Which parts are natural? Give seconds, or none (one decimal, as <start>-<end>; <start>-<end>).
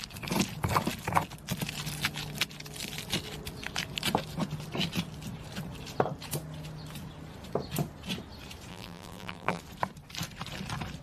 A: 0.0-8.7; 9.6-11.0